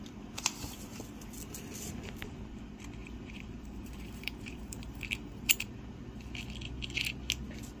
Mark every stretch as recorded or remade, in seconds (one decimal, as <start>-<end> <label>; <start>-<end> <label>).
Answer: 0.0-3.0 recorded; 3.0-5.7 remade; 5.7-7.8 recorded